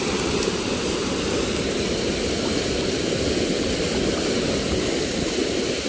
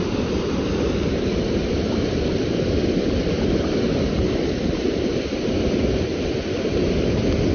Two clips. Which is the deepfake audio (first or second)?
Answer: second